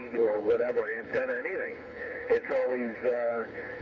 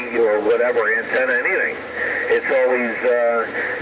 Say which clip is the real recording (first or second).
second